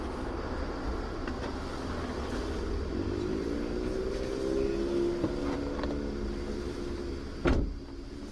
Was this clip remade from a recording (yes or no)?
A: no